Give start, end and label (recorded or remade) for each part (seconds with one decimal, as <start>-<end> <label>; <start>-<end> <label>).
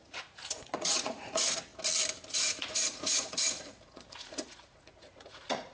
0.0-1.7 remade; 1.7-2.3 recorded; 2.3-5.7 remade